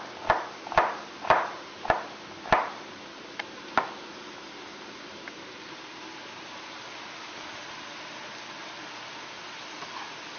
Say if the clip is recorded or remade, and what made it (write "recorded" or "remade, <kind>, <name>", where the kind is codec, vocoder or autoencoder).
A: recorded